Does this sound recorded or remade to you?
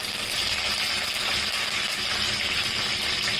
recorded